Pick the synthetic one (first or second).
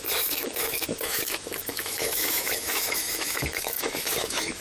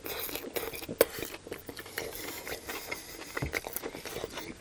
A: first